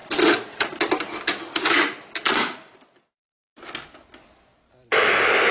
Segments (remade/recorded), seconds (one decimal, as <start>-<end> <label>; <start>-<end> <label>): 0.0-5.5 recorded